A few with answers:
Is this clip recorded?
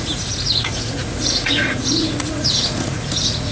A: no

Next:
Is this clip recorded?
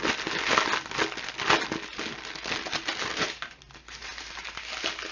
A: yes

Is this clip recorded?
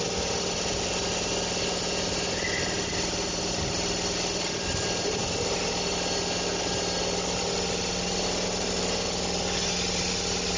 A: yes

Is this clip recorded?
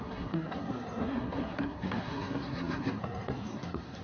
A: no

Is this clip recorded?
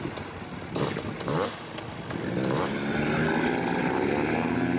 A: yes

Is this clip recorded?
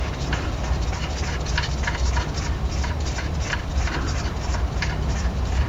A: yes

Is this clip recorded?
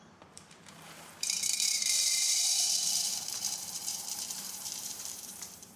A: no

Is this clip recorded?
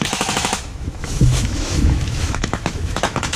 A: no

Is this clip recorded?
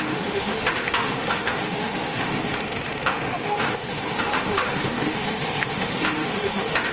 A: no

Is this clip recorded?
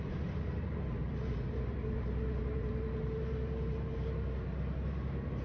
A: no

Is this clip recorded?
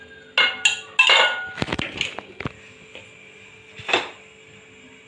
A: yes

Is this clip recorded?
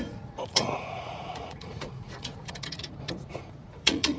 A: no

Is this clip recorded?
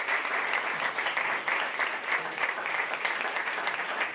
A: yes